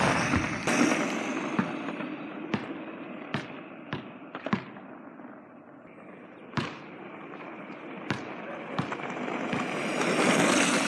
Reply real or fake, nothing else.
real